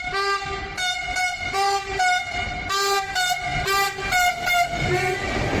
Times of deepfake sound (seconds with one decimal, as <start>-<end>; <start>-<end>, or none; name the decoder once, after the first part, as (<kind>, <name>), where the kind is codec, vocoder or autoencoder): none